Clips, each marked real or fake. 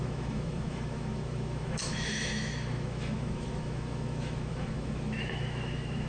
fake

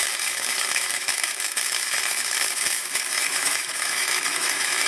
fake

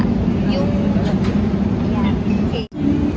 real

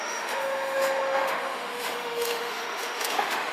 fake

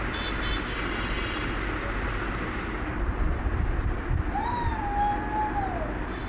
real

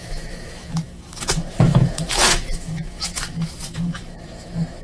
fake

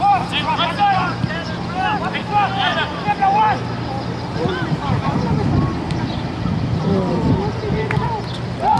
real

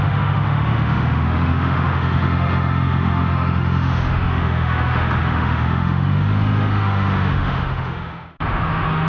fake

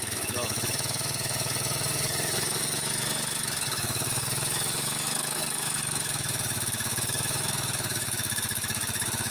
fake